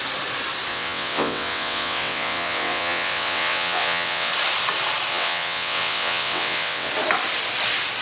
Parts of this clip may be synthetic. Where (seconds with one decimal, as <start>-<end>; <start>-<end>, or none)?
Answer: 0.7-4.3; 5.1-6.9